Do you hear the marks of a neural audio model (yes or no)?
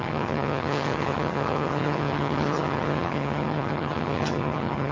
yes